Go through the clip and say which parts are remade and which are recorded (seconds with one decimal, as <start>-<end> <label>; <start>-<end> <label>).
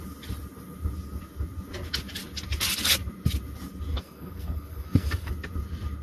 0.0-3.9 recorded; 3.9-5.3 remade; 5.3-6.0 recorded